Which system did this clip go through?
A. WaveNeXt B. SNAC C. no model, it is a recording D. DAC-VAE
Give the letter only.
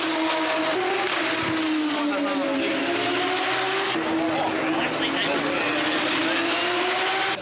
C